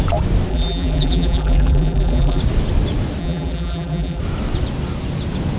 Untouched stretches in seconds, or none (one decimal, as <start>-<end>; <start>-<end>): 0.0-0.5; 2.4-3.2; 4.2-5.6